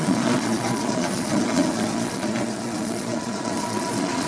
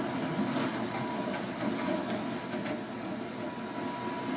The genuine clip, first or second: second